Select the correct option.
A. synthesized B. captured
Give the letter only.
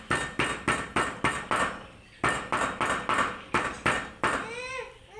B